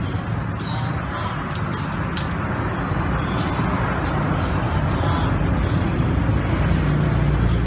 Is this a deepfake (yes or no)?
no